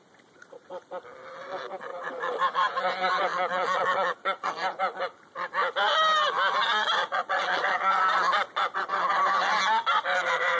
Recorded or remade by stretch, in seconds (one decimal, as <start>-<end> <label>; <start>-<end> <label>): 0.0-1.9 recorded; 1.9-2.8 remade; 2.8-3.3 recorded; 3.3-4.5 remade; 4.5-7.0 recorded; 7.0-8.0 remade; 8.0-10.6 recorded